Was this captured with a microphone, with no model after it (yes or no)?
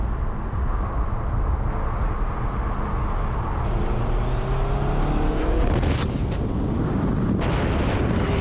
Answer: yes